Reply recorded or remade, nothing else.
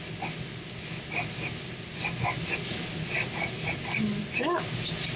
recorded